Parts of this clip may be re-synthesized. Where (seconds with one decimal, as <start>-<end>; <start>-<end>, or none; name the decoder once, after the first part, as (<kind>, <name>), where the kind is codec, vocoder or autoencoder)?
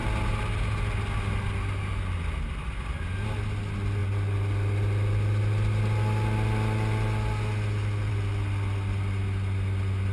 none